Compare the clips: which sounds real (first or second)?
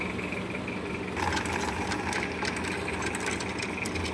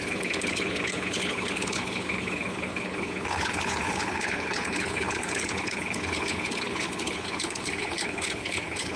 first